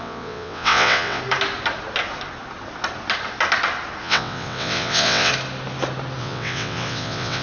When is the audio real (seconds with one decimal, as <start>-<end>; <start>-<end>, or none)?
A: 1.2-4.0; 5.3-6.2